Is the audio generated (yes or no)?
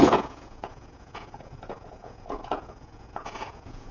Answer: yes